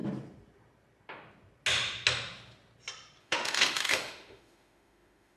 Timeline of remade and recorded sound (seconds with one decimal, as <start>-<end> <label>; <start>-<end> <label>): 0.0-3.2 recorded; 3.2-5.4 remade